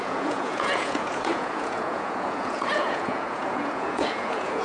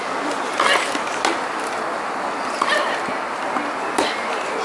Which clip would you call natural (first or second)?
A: second